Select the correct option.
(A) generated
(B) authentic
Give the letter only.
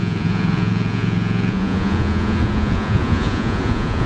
A